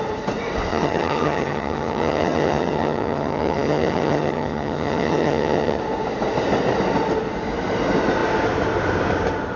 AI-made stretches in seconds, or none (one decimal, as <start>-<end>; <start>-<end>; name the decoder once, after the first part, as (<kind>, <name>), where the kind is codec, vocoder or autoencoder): 0.7-5.8 (vocoder, HiFi-GAN)